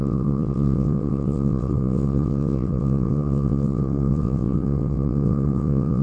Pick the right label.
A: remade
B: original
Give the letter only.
A